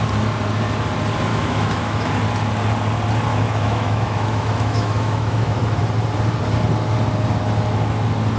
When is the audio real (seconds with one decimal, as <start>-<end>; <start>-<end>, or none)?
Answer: 0.0-1.3; 2.1-3.3; 5.8-8.4